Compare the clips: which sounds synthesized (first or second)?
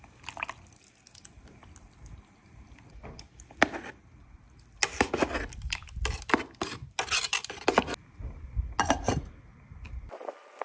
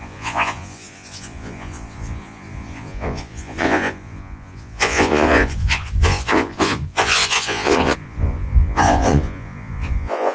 second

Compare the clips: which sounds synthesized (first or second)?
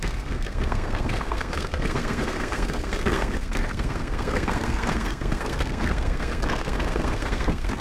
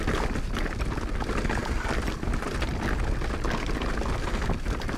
first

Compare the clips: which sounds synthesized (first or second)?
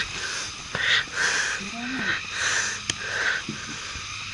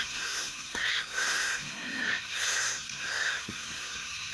second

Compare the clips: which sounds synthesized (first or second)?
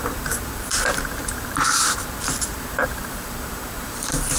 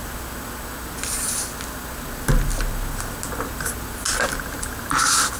first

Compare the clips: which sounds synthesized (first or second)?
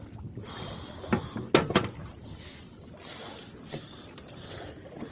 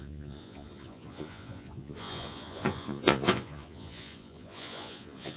second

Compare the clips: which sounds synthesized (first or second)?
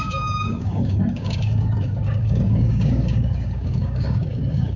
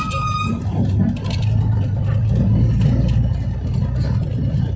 first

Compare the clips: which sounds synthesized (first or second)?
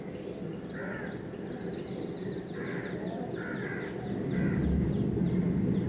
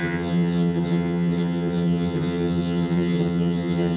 second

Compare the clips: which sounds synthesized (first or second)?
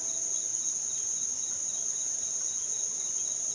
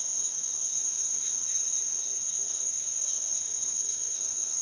second